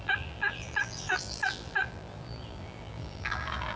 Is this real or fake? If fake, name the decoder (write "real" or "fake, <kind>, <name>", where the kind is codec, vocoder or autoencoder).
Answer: fake, vocoder, BigVGAN v2